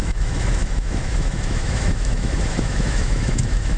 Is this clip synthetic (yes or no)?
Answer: yes